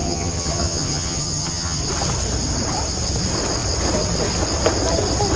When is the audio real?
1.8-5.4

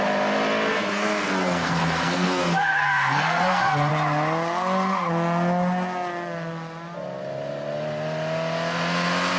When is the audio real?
0.0-0.7; 3.9-9.4

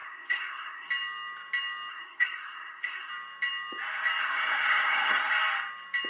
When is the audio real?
0.9-1.9; 3.1-4.2; 5.3-6.1

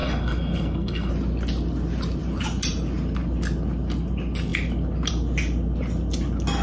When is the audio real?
1.1-6.6

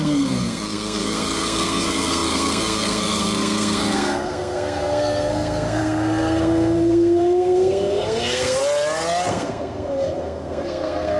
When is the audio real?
8.6-9.3

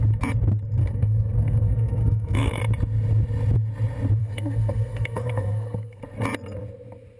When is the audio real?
0.0-0.8; 2.6-4.2; 6.0-7.2